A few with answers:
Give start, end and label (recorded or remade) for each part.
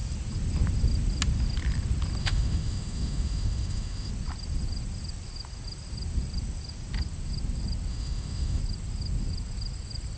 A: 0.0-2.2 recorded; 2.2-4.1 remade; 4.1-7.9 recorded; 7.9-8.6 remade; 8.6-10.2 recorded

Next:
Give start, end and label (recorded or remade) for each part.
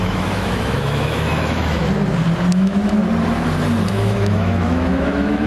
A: 0.0-1.8 remade; 1.8-2.5 recorded; 2.5-3.0 remade; 3.0-3.9 recorded; 3.9-5.5 remade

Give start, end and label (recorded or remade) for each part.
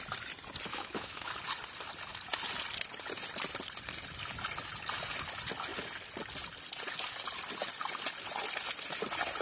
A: 0.0-0.7 recorded; 0.7-1.3 remade; 1.3-9.4 recorded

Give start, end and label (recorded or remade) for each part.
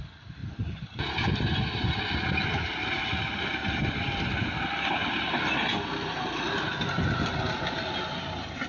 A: 0.0-8.7 recorded